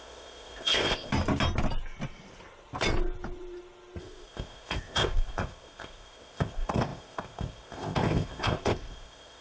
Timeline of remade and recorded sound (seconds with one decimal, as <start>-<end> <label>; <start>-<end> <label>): 0.0-1.1 remade; 1.1-4.0 recorded; 4.0-9.4 remade